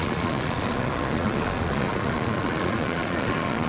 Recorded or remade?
remade